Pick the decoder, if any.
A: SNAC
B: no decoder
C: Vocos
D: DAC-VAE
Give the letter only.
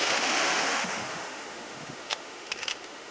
D